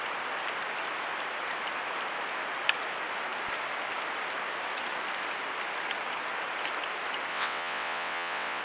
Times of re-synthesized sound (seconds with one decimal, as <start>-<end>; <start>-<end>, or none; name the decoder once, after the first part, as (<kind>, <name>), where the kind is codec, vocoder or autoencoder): 7.3-8.6 (vocoder, WaveNeXt)